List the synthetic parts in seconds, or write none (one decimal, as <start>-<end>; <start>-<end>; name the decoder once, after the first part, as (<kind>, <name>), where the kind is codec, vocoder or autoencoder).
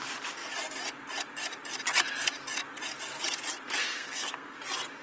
3.8-4.6 (codec, SNAC)